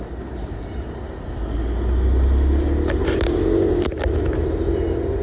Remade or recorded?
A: recorded